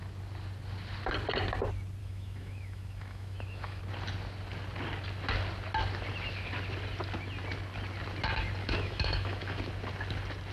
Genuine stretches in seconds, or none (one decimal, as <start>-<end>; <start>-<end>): 0.0-2.0; 3.8-8.6; 9.6-10.5